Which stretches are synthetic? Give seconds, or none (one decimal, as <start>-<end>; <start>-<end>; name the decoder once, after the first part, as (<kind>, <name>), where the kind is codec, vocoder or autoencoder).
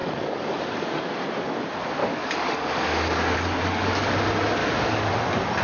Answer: 0.0-1.0 (codec, DAC); 2.0-4.1; 4.6-5.1